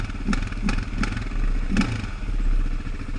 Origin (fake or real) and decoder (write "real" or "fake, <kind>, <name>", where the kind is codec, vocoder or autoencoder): real